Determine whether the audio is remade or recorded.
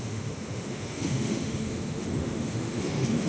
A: remade